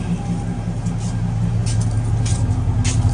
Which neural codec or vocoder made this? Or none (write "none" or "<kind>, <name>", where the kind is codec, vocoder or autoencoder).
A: none